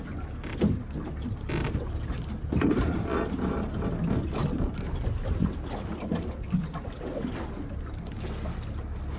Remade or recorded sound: recorded